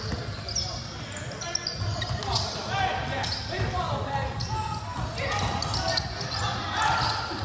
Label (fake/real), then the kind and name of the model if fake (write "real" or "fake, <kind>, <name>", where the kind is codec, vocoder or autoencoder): real